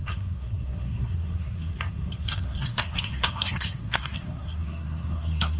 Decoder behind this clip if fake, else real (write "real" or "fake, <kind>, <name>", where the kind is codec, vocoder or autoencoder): fake, codec, SNAC